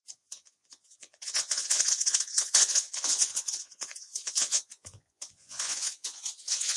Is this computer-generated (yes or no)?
yes